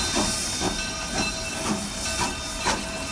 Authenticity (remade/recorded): recorded